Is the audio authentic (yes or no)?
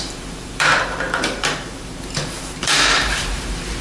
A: no